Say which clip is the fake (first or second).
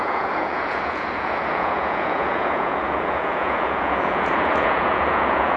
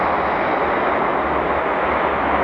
first